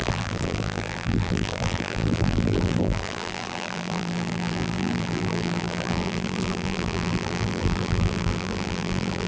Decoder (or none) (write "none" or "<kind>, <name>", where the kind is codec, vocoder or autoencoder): vocoder, BigVGAN v2